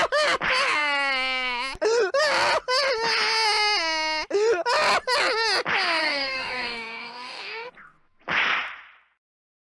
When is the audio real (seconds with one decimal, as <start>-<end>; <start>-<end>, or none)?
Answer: 0.0-6.0; 7.7-9.8